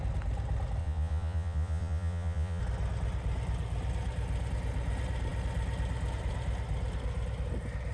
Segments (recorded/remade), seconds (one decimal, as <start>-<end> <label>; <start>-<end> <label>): 0.0-0.8 recorded; 0.8-2.6 remade; 2.6-7.9 recorded